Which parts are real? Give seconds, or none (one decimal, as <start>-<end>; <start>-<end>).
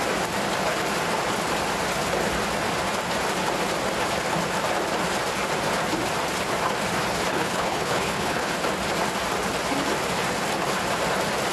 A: 0.0-7.3; 8.5-11.5